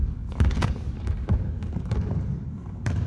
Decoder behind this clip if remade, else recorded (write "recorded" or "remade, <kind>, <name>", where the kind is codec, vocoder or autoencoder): remade, codec, DAC